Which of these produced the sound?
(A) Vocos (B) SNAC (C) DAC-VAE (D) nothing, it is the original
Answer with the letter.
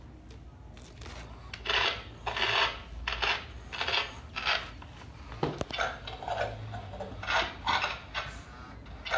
D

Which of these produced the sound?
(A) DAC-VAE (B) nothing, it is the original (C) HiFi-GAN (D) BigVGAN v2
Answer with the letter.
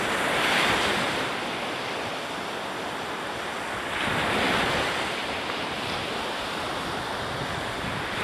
B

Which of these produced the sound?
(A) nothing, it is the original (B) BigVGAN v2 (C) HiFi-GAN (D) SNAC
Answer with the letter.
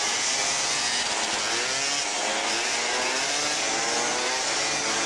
A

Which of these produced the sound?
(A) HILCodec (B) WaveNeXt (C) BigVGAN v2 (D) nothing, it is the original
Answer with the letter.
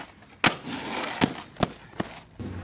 D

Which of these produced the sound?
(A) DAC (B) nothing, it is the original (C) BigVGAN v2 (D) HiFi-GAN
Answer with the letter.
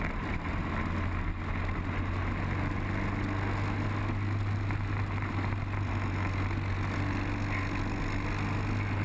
B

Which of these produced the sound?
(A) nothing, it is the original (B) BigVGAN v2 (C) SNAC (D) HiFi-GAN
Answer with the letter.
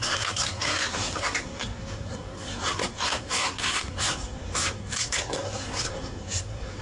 C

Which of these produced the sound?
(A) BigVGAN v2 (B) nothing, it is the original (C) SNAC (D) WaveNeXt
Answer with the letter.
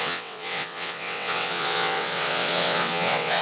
D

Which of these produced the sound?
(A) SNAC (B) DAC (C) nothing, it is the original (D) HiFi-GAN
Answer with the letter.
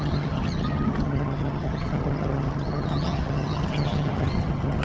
D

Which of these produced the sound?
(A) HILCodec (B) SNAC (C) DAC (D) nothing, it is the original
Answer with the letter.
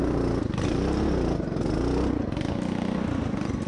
D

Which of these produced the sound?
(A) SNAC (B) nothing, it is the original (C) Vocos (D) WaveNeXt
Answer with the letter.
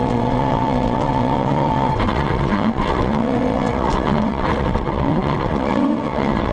D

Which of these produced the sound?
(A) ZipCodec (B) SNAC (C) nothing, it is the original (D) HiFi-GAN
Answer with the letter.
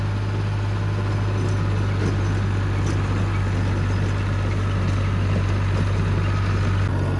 C